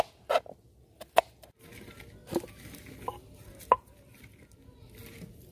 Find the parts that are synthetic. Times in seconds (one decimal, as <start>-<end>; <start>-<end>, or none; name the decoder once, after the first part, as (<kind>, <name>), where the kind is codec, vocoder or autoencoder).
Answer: none